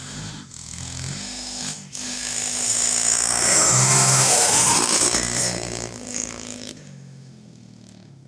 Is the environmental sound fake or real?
fake